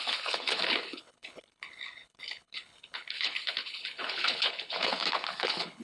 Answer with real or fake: fake